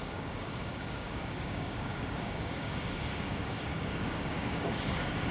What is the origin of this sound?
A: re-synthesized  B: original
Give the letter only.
A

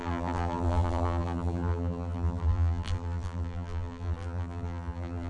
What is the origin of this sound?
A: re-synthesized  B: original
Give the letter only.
A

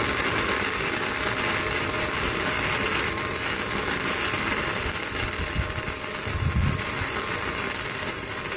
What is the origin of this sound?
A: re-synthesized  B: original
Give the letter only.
B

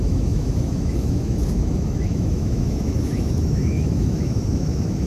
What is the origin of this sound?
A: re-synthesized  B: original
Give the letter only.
A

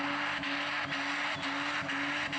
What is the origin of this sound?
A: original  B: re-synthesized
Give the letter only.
A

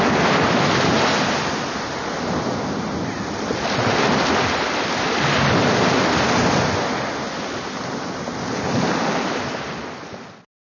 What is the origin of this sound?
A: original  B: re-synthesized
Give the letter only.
A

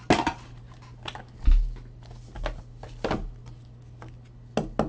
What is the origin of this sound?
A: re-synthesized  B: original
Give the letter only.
B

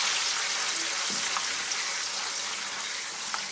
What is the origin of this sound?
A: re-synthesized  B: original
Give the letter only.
B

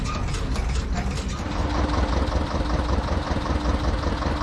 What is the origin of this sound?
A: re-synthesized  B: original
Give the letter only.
B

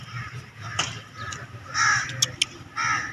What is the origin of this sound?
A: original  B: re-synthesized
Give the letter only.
A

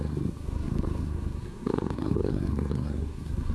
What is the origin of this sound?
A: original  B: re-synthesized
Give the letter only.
B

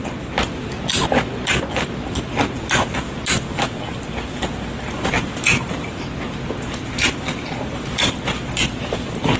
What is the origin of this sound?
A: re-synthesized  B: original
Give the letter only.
B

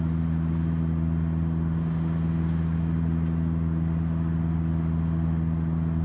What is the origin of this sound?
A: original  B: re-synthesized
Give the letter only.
A